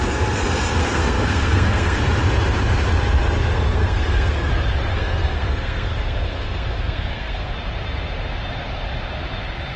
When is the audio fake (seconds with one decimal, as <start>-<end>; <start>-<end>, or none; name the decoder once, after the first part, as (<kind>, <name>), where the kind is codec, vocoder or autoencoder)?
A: 0.8-2.0 (codec, SNAC); 3.5-4.5; 4.9-7.5